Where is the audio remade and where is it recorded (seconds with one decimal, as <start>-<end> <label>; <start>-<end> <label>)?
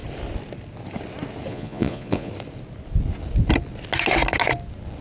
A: 0.0-1.5 recorded; 1.5-2.3 remade; 2.3-5.0 recorded